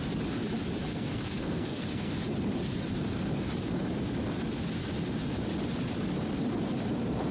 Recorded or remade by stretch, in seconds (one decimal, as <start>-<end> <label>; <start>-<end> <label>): 0.0-0.9 recorded; 0.9-2.1 remade; 2.1-7.3 recorded